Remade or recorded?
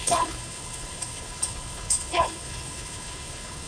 remade